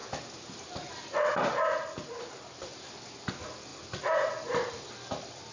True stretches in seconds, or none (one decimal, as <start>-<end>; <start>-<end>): 0.0-5.5